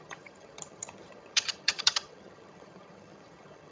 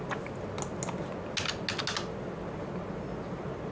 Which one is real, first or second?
second